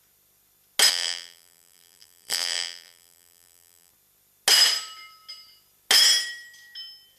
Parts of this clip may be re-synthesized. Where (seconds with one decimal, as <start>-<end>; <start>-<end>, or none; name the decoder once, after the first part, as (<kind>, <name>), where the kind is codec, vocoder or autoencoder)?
0.9-3.9 (vocoder, BigVGAN v2)